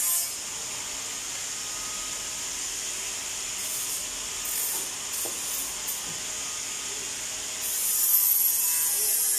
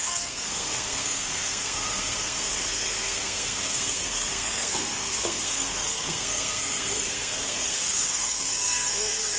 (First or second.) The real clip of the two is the first